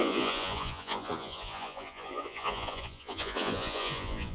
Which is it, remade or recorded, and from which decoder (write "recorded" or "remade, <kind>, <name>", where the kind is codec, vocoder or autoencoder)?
remade, vocoder, Vocos